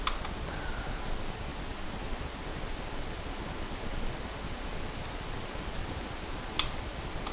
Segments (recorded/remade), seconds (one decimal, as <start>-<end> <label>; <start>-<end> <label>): 0.0-7.3 recorded